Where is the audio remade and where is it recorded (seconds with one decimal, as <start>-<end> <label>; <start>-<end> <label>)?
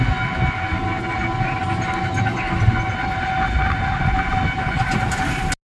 0.0-5.8 recorded